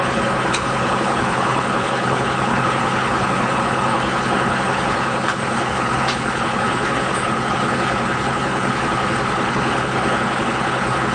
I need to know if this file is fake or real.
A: fake